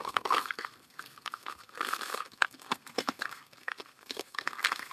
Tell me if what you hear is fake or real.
fake